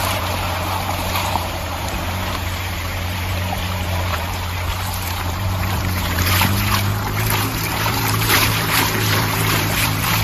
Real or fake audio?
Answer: fake